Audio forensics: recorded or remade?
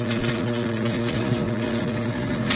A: remade